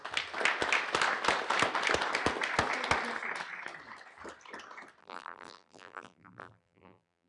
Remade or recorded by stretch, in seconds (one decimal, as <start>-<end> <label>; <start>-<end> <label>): 0.0-5.0 recorded; 5.0-7.3 remade